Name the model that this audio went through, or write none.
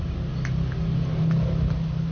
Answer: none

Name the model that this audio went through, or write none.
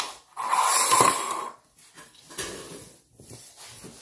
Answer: none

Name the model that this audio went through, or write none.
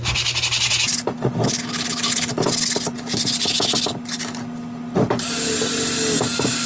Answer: none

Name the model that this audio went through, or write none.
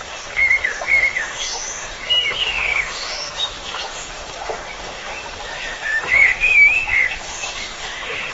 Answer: autoencoder, DAC-VAE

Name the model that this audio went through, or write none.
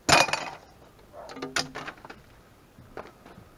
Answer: none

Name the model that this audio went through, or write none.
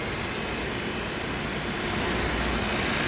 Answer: none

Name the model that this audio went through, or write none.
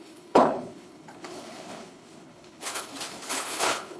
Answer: codec, HILCodec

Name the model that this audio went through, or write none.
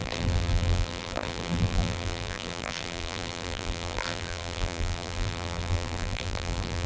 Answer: vocoder, BigVGAN v2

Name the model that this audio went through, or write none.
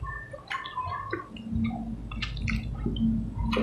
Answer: none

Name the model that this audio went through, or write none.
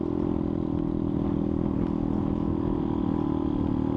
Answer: none